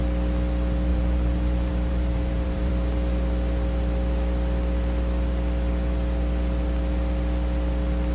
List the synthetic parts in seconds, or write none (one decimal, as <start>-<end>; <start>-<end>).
0.9-2.7